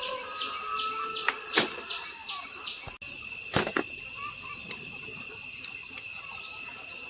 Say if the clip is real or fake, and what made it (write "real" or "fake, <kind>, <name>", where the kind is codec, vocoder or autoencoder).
real